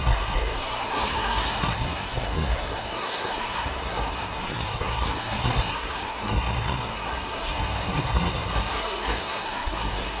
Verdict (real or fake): fake